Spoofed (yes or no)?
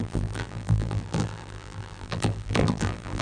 yes